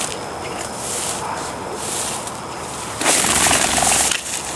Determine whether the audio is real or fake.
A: real